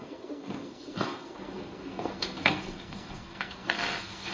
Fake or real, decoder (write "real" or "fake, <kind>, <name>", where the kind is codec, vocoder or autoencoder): fake, codec, SNAC